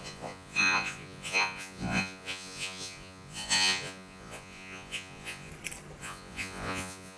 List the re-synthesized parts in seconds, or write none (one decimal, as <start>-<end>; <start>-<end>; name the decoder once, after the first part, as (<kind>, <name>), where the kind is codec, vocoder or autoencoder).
0.0-5.5 (vocoder, Vocos); 6.0-7.2